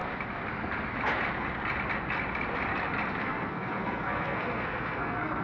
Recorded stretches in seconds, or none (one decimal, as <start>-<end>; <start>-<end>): 0.0-3.2